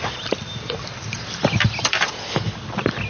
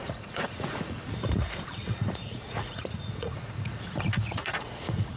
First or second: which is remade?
second